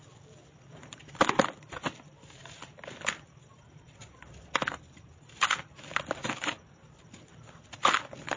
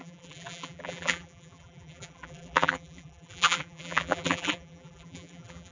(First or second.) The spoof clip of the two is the second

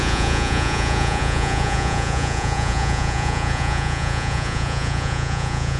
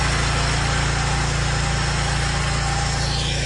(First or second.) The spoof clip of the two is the first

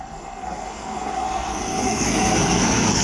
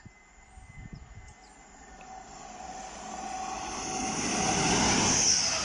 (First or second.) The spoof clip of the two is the first